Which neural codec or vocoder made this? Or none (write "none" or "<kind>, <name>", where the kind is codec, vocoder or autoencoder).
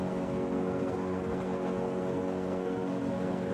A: codec, SNAC